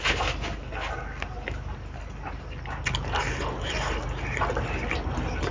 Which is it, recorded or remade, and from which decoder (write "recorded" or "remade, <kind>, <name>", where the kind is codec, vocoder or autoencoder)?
recorded